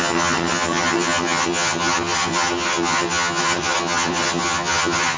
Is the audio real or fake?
fake